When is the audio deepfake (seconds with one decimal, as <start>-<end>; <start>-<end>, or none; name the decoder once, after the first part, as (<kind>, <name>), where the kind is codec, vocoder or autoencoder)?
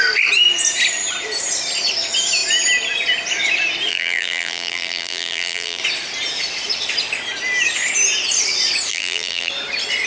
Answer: 3.9-5.8 (vocoder, BigVGAN v2); 8.9-9.5